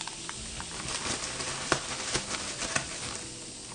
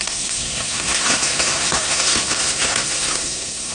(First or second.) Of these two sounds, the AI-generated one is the second